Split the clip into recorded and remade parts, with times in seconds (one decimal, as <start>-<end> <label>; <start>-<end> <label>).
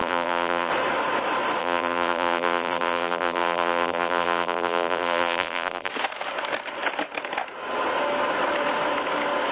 0.0-0.7 remade; 0.7-1.6 recorded; 1.6-5.9 remade; 5.9-9.5 recorded